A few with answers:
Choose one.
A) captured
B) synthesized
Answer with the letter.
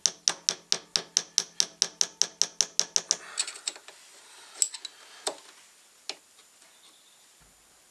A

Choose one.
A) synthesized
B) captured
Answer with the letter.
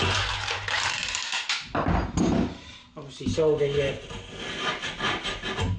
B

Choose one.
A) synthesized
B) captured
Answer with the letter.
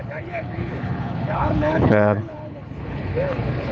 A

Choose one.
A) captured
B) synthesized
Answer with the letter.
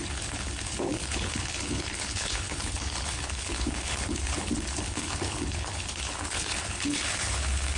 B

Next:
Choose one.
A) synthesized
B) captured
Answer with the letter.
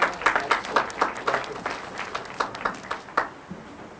B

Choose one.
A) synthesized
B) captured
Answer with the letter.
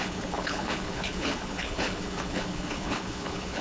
A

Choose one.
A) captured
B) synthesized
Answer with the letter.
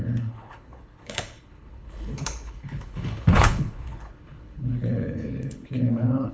B